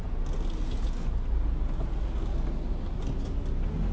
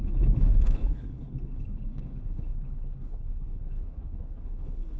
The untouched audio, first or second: first